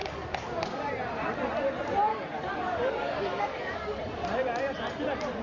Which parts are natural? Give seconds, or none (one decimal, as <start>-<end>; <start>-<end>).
0.9-2.1; 4.0-5.4